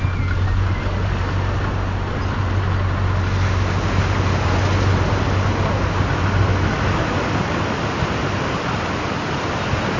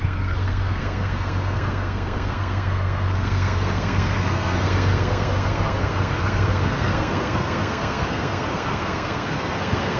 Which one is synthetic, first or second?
second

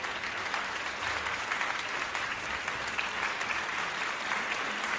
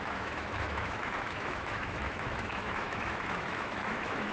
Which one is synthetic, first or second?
second